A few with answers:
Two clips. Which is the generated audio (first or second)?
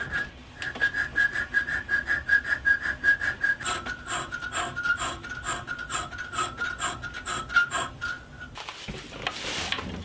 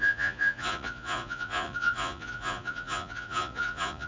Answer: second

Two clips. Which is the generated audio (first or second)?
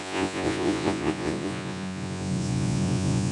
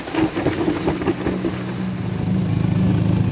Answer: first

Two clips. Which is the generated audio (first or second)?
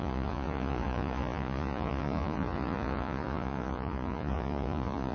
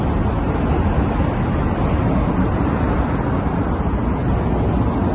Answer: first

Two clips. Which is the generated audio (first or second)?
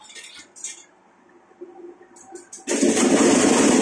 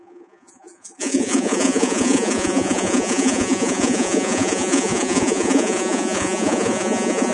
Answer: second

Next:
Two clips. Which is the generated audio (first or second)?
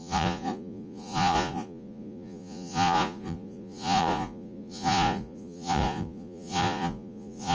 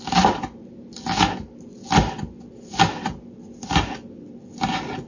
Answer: first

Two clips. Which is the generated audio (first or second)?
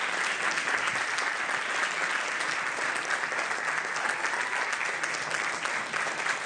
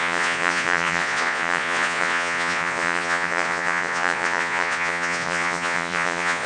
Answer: second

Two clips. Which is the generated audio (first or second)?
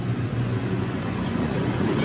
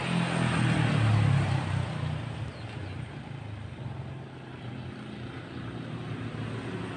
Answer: first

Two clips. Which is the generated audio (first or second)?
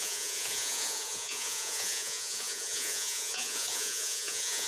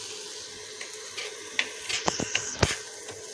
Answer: first